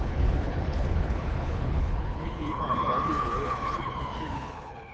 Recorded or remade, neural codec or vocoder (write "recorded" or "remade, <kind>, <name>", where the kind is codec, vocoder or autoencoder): remade, codec, HILCodec